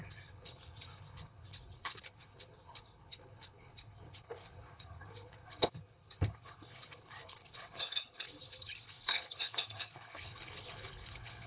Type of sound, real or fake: fake